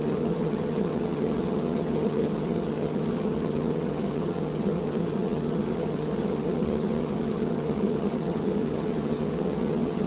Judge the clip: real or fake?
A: fake